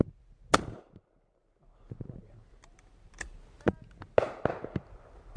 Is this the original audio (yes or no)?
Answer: yes